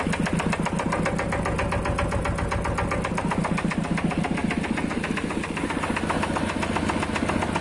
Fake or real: real